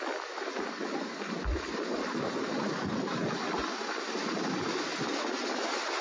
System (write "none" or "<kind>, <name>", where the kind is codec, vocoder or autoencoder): none